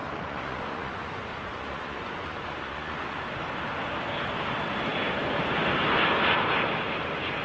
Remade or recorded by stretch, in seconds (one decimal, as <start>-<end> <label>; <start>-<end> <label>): 0.0-3.2 remade; 3.2-7.4 recorded